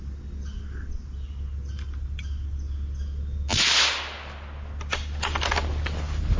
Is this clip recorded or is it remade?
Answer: recorded